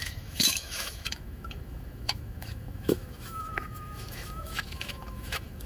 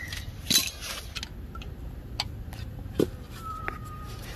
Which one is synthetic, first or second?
first